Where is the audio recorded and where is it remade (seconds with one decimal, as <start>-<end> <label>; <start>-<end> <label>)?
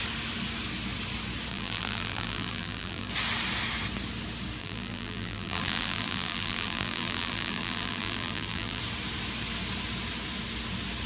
0.0-1.5 recorded; 1.5-3.1 remade; 3.1-4.6 recorded; 4.6-8.8 remade; 8.8-11.1 recorded